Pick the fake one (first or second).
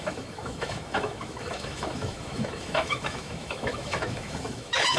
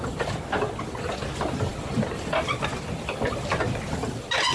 first